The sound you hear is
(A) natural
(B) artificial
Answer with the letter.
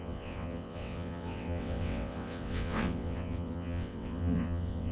B